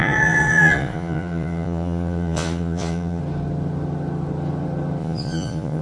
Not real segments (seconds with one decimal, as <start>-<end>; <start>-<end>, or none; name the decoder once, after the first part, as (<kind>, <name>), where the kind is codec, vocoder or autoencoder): 0.0-3.2 (vocoder, Vocos); 5.0-5.8